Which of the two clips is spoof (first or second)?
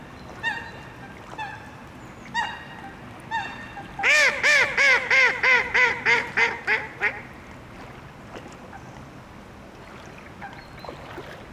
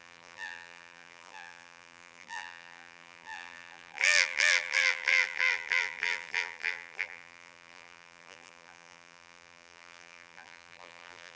second